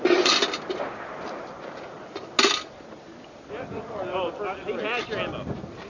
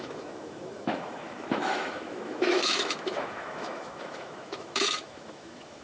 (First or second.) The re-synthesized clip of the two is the second